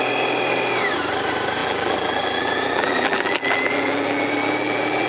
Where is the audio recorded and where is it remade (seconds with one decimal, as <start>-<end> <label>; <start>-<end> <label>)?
0.0-1.6 recorded; 1.6-5.1 remade